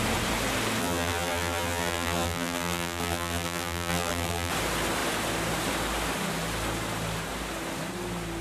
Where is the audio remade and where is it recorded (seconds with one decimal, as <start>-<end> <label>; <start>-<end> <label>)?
0.0-0.8 recorded; 0.8-4.5 remade; 4.5-8.4 recorded